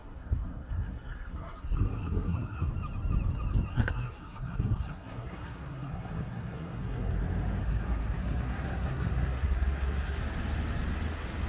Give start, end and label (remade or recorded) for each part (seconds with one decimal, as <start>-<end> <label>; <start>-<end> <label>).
0.0-2.7 remade; 2.7-3.7 recorded; 3.7-7.1 remade; 7.1-7.6 recorded; 7.6-10.2 remade; 10.2-11.5 recorded